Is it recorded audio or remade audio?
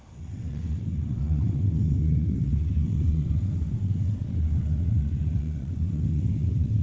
remade